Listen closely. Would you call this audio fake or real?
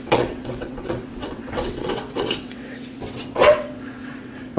fake